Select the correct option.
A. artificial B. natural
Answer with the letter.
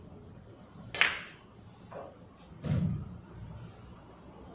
B